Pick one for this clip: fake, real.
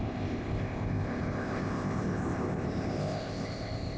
fake